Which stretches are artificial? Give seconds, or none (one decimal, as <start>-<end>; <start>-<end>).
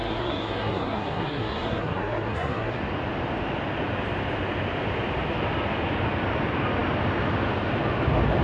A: 0.0-2.8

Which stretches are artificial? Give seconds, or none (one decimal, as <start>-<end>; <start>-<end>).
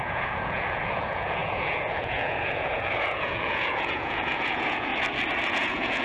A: 0.0-4.9; 5.5-6.0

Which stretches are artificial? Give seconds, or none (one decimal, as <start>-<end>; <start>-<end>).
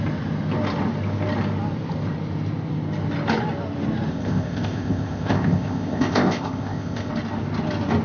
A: 4.1-7.1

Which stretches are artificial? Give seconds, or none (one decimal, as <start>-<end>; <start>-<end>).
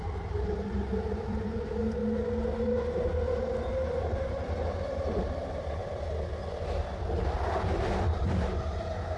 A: 0.0-2.0; 4.0-5.8; 7.1-9.2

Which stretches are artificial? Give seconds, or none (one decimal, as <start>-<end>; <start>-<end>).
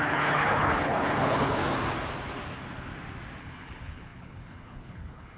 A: 0.0-1.6; 3.4-5.4